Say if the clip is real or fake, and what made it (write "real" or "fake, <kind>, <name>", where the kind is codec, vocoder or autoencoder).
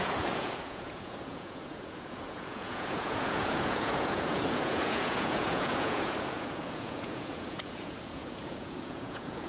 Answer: fake, vocoder, Vocos